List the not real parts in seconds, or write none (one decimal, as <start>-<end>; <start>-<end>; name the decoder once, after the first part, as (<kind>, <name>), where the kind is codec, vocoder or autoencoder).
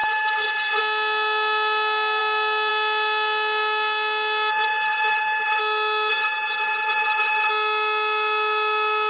0.0-0.8 (vocoder, BigVGAN v2); 4.5-5.6; 6.1-7.5